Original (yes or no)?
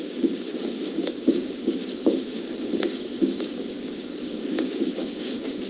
no